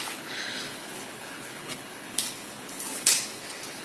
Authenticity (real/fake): fake